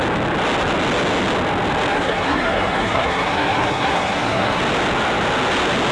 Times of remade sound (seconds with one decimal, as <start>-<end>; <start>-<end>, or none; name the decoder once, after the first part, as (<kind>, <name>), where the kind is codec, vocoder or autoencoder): 1.9-4.6 (codec, SNAC)